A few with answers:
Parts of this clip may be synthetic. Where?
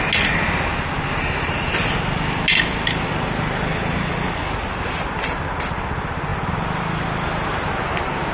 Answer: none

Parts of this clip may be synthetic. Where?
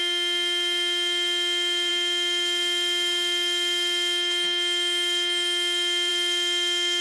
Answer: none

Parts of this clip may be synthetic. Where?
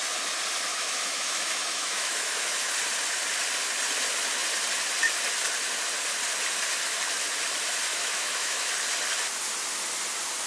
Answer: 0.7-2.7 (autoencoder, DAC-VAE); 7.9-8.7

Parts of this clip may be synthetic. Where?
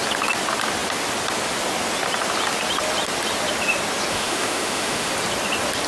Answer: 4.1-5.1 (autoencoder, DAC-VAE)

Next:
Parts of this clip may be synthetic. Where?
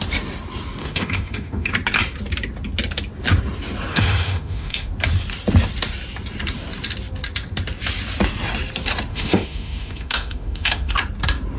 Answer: 0.8-1.7 (autoencoder, DAC-VAE); 3.9-4.9; 9.1-10.9